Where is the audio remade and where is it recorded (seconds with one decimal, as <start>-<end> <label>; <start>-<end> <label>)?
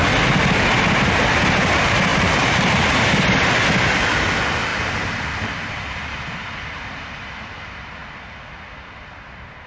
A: 0.0-2.1 recorded; 2.1-2.8 remade; 2.8-4.7 recorded; 4.7-7.0 remade; 7.0-9.7 recorded